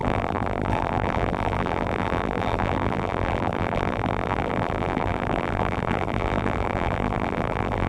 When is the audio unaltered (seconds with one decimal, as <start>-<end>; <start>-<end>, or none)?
none